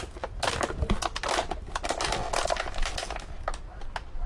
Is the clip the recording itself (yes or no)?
yes